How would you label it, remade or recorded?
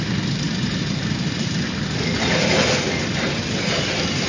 recorded